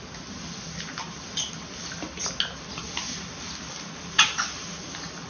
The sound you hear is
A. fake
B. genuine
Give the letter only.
B